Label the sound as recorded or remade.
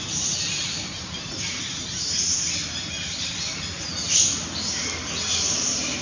recorded